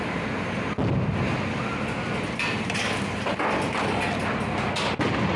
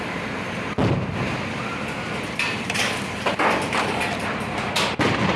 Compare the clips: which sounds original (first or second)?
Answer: first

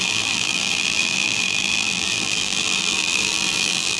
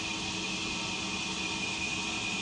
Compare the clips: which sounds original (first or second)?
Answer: second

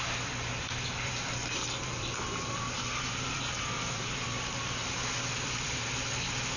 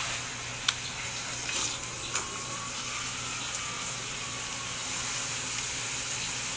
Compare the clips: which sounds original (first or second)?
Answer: second